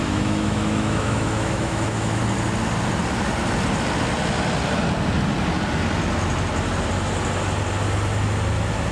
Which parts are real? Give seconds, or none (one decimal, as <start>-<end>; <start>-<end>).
2.2-8.9